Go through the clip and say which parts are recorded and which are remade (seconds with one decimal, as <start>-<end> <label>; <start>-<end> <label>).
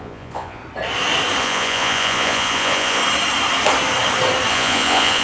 0.0-0.6 remade; 0.6-1.4 recorded; 1.4-3.0 remade; 3.0-4.5 recorded; 4.5-5.2 remade